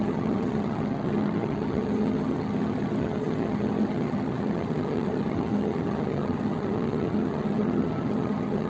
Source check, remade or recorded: remade